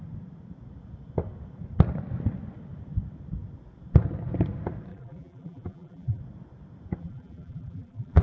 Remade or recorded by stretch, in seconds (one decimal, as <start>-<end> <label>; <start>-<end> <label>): 0.0-4.9 recorded; 4.9-6.2 remade; 6.2-7.0 recorded; 7.0-8.2 remade